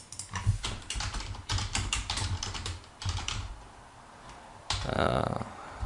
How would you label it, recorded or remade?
remade